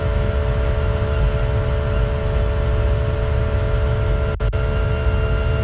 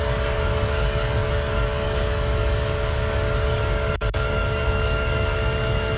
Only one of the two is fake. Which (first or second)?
second